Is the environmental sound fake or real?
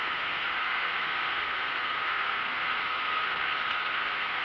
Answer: fake